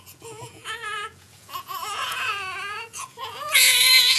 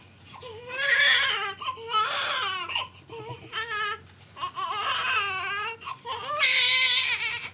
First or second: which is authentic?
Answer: second